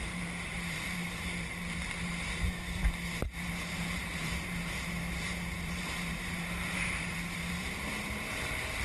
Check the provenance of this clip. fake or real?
fake